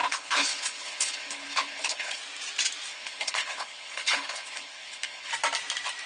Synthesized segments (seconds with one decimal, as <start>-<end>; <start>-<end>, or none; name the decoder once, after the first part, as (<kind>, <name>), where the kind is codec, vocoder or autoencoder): 0.0-2.2 (codec, HILCodec); 2.9-5.3